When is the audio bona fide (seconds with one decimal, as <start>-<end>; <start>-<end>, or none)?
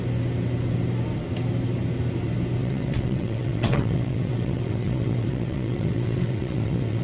0.0-2.6